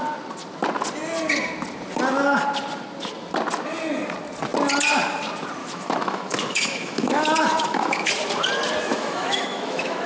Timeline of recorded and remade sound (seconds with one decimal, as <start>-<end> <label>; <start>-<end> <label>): 0.0-5.6 recorded; 5.6-8.1 remade; 8.1-8.9 recorded; 8.9-10.1 remade